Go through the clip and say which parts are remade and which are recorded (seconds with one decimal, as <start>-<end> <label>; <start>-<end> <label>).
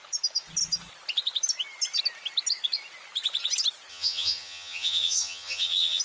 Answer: 0.0-3.9 recorded; 3.9-6.0 remade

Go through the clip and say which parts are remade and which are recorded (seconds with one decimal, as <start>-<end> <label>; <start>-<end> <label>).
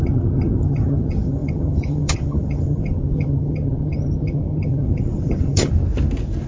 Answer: 0.0-5.7 remade; 5.7-6.5 recorded